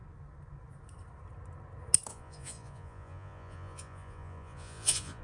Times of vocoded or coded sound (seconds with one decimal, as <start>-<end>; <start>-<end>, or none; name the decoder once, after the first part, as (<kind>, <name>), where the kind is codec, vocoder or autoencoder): 2.1-5.2 (vocoder, Vocos)